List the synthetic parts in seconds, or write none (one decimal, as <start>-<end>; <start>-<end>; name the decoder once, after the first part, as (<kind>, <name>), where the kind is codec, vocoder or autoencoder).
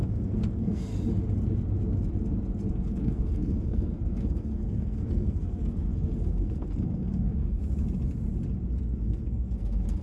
0.0-0.9 (codec, SNAC); 2.7-7.6; 8.8-10.0